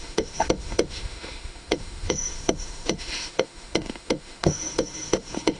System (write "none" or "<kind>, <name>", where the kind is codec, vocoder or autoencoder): autoencoder, DAC-VAE